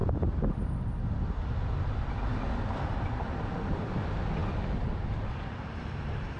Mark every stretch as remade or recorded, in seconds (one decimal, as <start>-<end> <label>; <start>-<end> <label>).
0.0-6.4 recorded